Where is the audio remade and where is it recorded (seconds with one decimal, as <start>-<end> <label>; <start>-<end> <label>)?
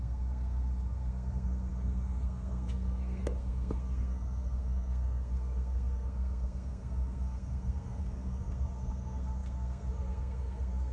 0.0-10.9 remade